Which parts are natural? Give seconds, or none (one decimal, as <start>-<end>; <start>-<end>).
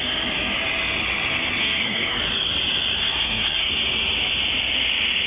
0.0-1.6; 2.2-3.0; 3.7-5.3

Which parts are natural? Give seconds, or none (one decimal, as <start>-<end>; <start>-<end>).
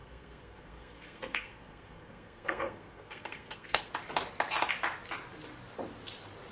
3.9-6.5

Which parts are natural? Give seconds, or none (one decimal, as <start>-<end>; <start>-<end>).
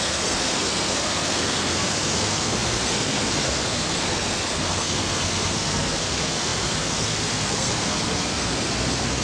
none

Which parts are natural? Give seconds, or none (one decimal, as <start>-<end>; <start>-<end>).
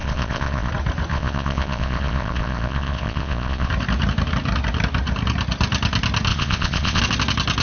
0.7-1.1; 3.7-6.3; 7.0-7.6